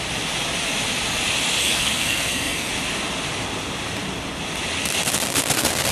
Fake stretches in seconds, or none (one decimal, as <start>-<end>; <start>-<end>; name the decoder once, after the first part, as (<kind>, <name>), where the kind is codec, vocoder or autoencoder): 1.6-2.7 (codec, SNAC)

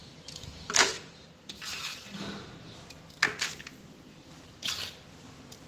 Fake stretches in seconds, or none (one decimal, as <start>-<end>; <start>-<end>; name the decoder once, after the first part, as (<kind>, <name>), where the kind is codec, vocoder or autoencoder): 0.0-1.1 (autoencoder, DAC-VAE)

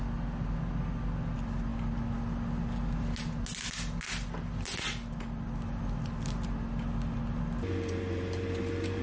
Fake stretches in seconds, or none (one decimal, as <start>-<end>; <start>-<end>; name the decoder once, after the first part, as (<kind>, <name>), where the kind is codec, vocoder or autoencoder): none

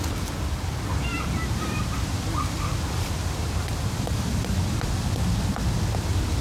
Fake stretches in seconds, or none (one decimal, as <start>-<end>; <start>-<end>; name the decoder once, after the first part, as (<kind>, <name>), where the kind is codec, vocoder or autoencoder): 1.1-4.9 (vocoder, BigVGAN v2)

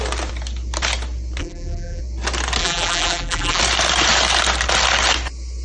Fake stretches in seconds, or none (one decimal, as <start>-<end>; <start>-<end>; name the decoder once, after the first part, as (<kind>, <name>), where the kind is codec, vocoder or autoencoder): 1.4-2.0 (vocoder, BigVGAN v2); 2.6-3.6